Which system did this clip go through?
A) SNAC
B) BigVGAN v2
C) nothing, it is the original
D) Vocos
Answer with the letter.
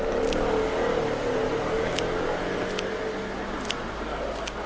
C